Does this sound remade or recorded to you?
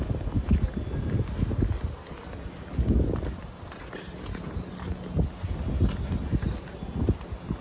recorded